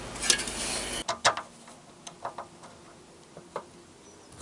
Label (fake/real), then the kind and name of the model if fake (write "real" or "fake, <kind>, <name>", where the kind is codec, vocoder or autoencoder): real